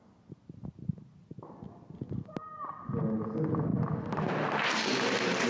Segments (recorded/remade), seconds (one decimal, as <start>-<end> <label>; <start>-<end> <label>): 0.0-5.5 recorded